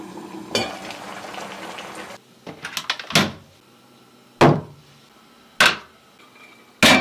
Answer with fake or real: real